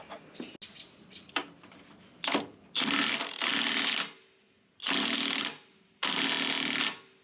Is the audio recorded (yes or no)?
yes